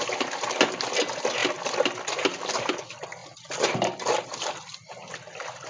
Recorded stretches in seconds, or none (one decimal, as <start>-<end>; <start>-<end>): 0.0-5.7